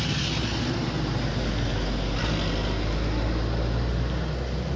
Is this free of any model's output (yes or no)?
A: yes